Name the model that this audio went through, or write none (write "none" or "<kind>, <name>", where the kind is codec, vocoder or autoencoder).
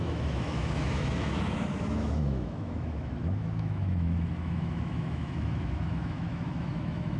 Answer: autoencoder, DAC-VAE